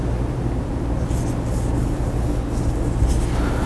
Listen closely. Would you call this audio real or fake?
real